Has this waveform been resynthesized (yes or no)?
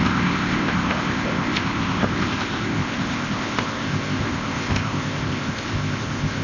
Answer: yes